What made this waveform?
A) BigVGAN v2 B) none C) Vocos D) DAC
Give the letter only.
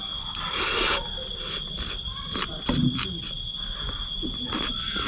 B